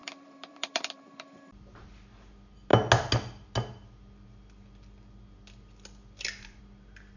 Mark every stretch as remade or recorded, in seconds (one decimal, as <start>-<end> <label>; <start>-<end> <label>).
0.0-1.9 remade; 1.9-7.2 recorded